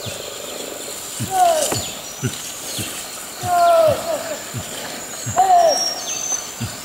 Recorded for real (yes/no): yes